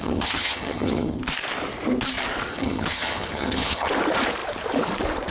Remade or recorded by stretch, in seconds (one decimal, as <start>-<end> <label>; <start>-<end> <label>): 0.0-1.2 remade; 1.2-2.5 recorded; 2.5-3.9 remade; 3.9-5.3 recorded